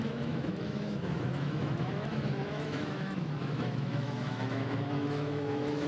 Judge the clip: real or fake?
fake